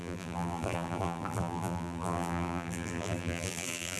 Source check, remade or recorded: remade